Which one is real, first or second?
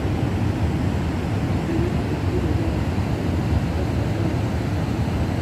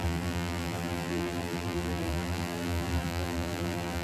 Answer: first